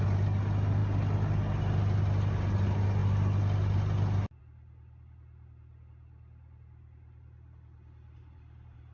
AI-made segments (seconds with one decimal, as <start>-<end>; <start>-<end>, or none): none